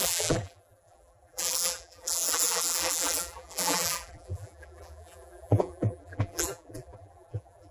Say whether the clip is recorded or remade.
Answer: remade